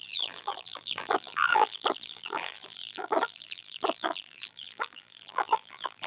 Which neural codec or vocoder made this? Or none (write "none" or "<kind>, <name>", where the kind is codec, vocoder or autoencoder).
vocoder, BigVGAN v2